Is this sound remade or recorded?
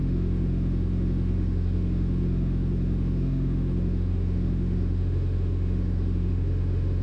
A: remade